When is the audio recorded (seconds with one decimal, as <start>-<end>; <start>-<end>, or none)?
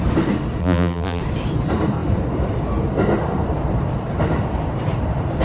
0.0-0.6; 1.2-5.4